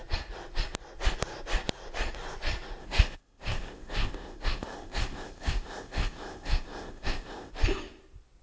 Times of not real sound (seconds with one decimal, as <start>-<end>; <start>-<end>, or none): 2.8-7.5